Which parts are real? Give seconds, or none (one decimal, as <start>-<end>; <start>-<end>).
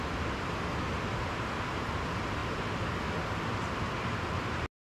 0.0-5.0